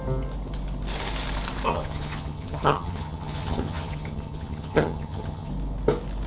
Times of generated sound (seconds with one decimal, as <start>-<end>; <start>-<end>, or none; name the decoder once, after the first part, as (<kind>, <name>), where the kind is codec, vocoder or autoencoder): 1.7-5.5 (vocoder, HiFi-GAN)

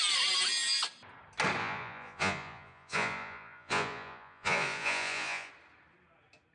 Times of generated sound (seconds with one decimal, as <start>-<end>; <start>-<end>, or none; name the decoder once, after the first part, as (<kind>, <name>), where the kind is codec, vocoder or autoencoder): 1.6-5.5 (vocoder, Vocos)